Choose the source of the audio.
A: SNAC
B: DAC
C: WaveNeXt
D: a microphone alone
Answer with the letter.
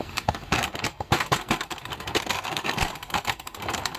A